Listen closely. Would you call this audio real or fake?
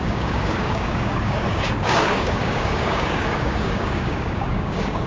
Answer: fake